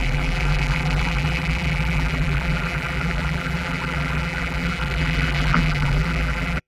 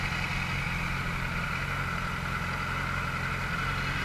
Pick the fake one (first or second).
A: first